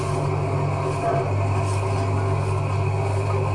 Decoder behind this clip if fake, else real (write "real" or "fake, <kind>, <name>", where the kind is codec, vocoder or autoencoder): real